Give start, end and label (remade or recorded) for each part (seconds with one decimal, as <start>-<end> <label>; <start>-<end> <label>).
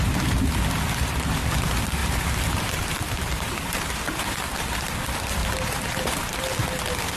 0.0-2.0 recorded; 2.0-3.9 remade; 3.9-5.4 recorded; 5.4-6.4 remade; 6.4-7.2 recorded